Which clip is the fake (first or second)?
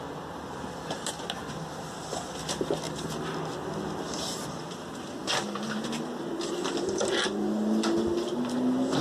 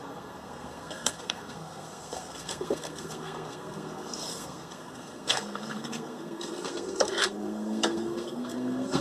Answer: second